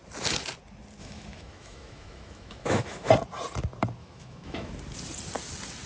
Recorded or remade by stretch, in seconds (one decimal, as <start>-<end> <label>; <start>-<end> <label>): 0.0-1.0 recorded; 1.0-3.1 remade; 3.1-4.0 recorded; 4.0-4.7 remade; 4.7-5.9 recorded